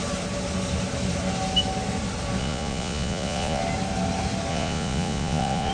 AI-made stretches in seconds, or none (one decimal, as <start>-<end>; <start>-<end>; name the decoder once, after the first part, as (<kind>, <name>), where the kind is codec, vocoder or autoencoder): 2.4-3.6 (vocoder, Vocos); 4.5-5.7